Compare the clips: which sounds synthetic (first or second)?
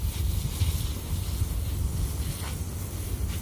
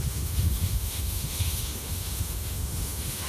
second